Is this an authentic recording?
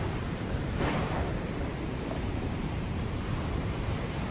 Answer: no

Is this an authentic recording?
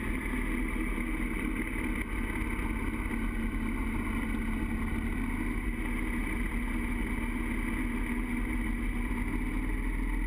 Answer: yes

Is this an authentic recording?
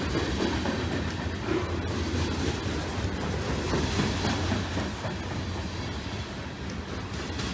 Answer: yes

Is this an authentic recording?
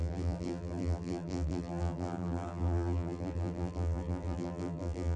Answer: no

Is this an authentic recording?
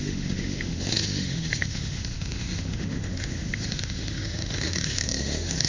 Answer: no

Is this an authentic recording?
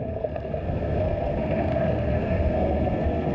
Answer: no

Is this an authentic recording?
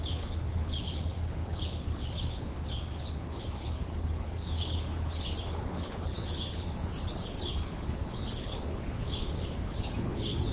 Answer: no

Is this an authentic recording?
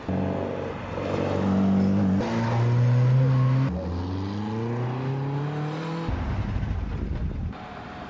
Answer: yes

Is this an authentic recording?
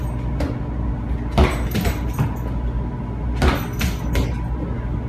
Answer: yes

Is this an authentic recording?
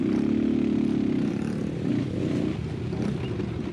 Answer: yes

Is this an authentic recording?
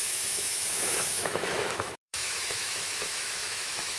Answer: no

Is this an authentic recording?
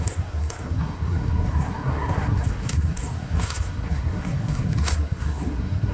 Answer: no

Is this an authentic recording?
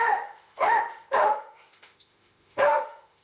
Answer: no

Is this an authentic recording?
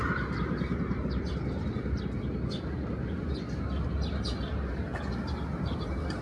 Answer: yes